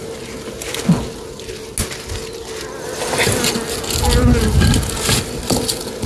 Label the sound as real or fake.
real